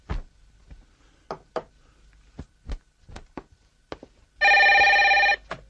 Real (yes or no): yes